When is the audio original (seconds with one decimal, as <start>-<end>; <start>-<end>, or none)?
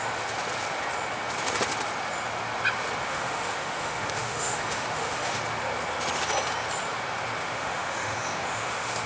0.0-3.0; 5.4-7.4